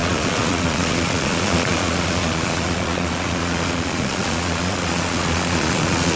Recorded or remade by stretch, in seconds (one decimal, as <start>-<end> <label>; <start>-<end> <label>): 0.0-6.2 remade